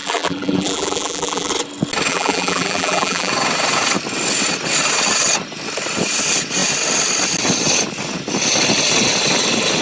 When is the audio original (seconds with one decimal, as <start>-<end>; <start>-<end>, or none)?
1.5-2.1; 3.3-9.8